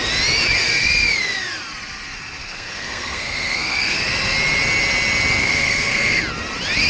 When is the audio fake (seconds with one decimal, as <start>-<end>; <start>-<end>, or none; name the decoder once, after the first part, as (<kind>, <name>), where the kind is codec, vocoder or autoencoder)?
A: 2.4-4.0 (codec, SNAC); 5.4-6.2